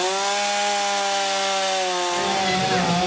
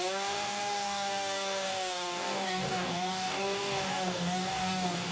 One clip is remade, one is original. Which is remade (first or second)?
second